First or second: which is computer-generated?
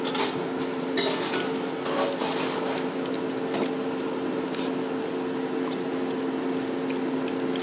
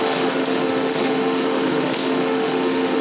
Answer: second